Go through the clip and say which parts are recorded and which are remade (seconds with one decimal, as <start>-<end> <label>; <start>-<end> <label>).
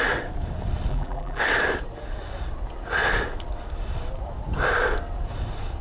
0.0-0.9 recorded; 0.9-1.4 remade; 1.4-5.8 recorded